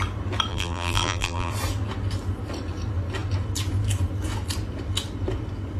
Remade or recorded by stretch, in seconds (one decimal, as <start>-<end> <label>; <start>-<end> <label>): 0.0-0.5 recorded; 0.5-1.5 remade; 1.5-5.8 recorded